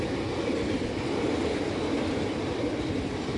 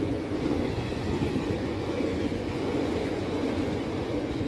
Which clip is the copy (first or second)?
second